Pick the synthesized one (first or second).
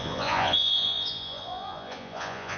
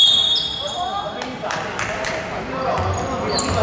first